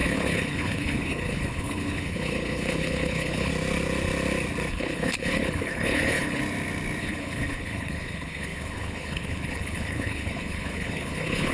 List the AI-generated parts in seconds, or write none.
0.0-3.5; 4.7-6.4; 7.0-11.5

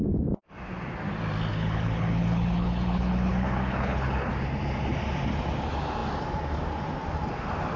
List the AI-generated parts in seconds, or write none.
1.5-4.3

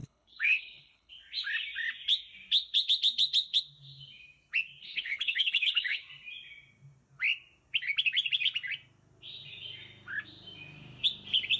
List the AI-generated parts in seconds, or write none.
0.0-1.1; 4.8-6.0

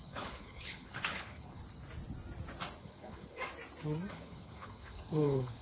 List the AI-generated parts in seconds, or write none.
0.0-1.6; 2.8-3.4; 4.1-5.6

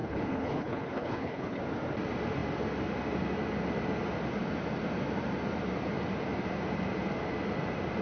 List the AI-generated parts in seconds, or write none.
0.0-1.6

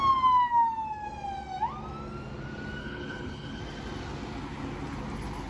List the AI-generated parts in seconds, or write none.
2.8-3.6

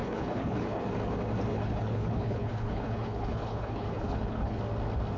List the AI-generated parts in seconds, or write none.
0.0-0.8; 1.5-4.6

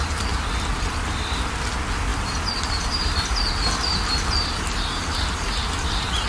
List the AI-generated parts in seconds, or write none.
none